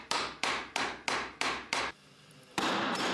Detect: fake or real fake